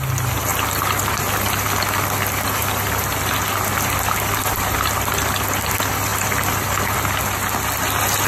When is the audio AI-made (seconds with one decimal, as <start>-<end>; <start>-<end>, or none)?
none